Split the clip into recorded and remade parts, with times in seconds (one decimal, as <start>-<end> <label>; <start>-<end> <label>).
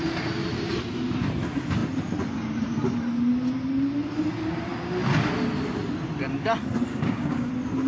0.0-6.9 recorded; 6.9-7.5 remade; 7.5-7.9 recorded